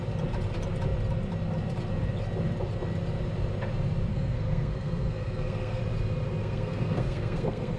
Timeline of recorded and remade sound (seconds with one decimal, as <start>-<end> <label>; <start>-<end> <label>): 0.0-4.1 recorded; 4.1-5.8 remade; 5.8-6.4 recorded; 6.4-7.8 remade